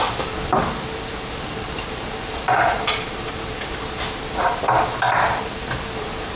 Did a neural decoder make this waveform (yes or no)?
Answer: no